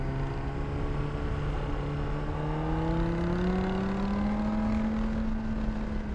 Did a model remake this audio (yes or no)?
no